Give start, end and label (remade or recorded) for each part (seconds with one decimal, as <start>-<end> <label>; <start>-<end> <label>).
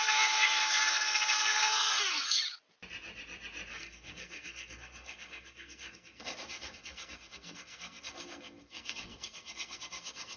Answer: 0.0-2.4 remade; 2.4-3.7 recorded; 3.7-10.4 remade